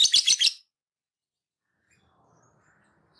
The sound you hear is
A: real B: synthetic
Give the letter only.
A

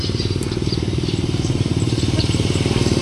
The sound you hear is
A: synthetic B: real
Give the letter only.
A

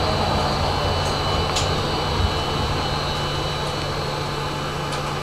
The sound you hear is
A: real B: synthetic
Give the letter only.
A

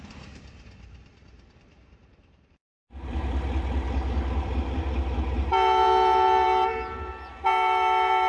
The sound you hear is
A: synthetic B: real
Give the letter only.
A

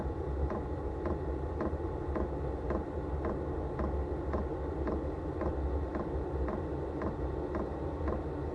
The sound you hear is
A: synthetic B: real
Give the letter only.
B